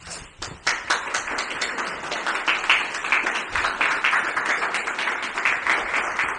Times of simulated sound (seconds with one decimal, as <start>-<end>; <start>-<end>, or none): 3.0-4.1; 4.8-5.4